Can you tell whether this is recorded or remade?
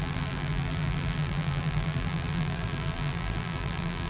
remade